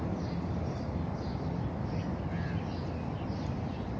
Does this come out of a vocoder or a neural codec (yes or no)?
no